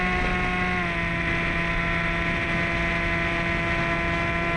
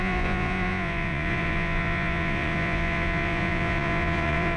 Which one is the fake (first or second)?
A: second